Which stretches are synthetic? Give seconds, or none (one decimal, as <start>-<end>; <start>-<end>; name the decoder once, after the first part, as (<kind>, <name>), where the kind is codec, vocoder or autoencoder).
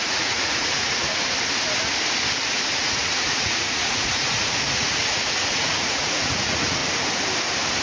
0.0-1.1 (vocoder, Vocos); 2.5-6.8